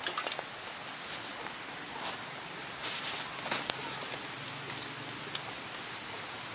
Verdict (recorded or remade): recorded